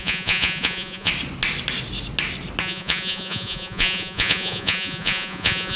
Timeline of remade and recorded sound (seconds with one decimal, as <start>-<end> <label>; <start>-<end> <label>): 0.0-1.1 remade; 1.1-2.6 recorded; 2.6-5.8 remade